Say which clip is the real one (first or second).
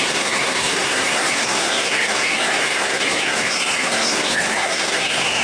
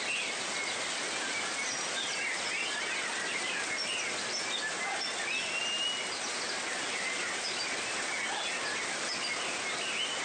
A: second